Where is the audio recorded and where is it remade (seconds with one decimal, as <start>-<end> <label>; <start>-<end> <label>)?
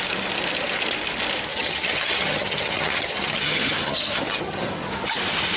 0.0-1.5 recorded; 1.5-4.7 remade; 4.7-5.6 recorded